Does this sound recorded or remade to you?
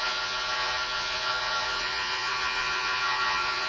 remade